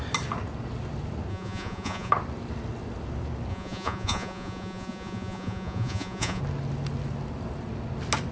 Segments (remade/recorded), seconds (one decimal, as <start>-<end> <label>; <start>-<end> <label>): 0.0-1.3 recorded; 1.3-2.1 remade; 2.1-3.5 recorded; 3.5-6.4 remade; 6.4-8.3 recorded